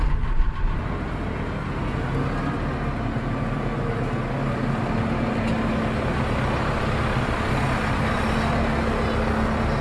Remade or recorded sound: recorded